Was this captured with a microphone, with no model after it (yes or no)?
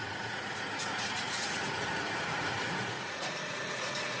no